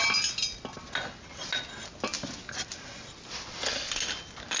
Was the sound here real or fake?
real